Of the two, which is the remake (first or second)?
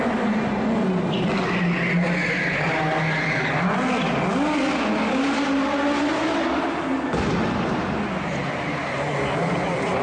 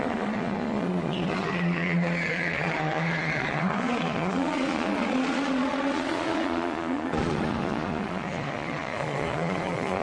second